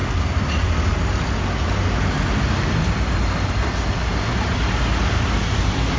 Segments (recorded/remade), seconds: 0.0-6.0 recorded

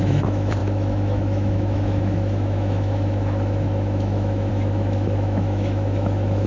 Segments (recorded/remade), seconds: 0.0-6.5 remade

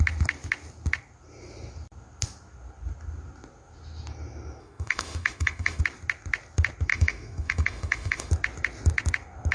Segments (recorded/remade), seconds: 0.0-4.6 recorded; 4.6-5.8 remade; 5.8-6.9 recorded; 6.9-8.3 remade; 8.3-9.5 recorded

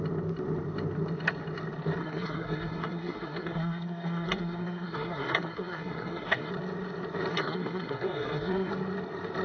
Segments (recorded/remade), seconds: 0.0-2.0 recorded; 2.0-6.5 remade; 6.5-7.3 recorded; 7.3-8.7 remade; 8.7-9.4 recorded

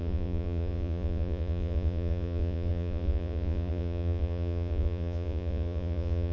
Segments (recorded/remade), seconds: 0.0-6.3 remade

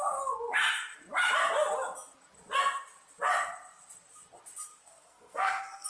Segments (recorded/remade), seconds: 0.0-4.7 recorded; 4.7-5.9 remade